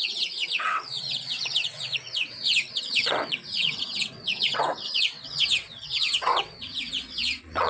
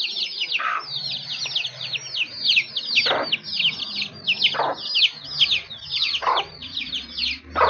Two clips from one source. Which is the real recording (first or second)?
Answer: second